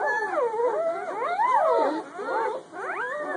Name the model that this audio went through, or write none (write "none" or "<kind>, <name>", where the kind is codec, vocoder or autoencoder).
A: none